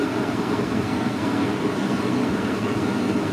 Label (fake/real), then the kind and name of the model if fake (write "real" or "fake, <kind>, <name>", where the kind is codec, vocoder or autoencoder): fake, codec, SNAC